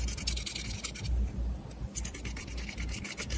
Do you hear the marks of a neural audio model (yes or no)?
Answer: no